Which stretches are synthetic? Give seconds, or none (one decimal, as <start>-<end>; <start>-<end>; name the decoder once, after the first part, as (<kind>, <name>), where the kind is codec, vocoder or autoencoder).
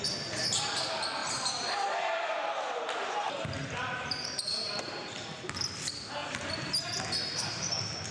1.2-5.5 (vocoder, BigVGAN v2); 6.2-6.9